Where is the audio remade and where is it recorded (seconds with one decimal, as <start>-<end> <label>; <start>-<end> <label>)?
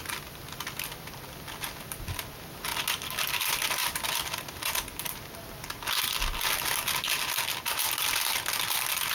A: 0.0-9.1 recorded